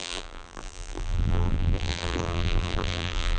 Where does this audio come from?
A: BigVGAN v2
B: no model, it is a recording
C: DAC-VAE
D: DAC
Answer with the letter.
A